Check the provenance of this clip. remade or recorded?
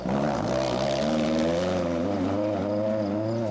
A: recorded